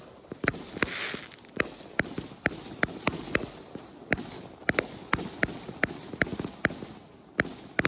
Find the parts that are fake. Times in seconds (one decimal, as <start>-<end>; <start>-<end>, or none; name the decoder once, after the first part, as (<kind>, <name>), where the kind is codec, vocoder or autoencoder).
none